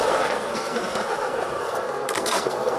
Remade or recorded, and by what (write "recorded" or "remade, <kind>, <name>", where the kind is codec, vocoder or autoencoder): remade, codec, SNAC